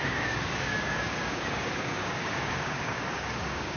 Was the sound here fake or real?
fake